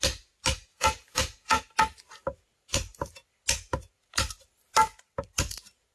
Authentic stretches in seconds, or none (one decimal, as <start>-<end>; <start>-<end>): 0.0-0.7; 1.6-5.9